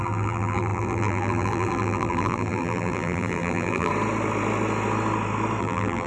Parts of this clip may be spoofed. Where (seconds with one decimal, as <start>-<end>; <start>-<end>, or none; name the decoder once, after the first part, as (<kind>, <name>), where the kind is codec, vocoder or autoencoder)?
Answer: 0.0-3.9 (vocoder, BigVGAN v2); 5.6-6.1